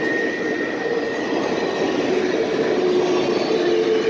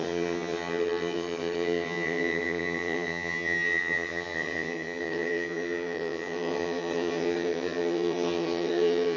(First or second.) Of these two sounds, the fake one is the second